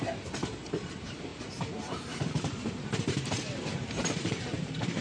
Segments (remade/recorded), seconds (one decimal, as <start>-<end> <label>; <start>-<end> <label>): 0.0-5.0 remade